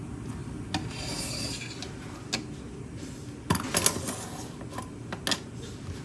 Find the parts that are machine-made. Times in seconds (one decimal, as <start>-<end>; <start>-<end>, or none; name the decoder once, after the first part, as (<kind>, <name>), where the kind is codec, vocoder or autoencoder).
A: none